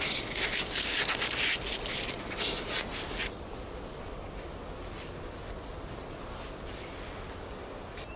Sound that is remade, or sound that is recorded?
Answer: recorded